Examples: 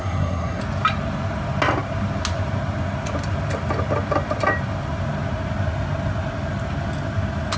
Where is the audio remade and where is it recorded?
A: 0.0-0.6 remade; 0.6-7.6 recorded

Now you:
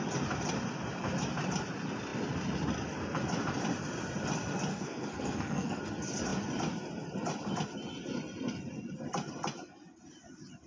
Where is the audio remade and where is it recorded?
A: 0.0-4.7 recorded; 4.7-5.8 remade; 5.8-10.7 recorded